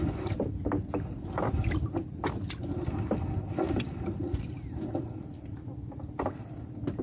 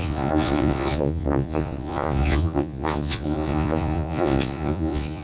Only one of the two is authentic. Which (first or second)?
first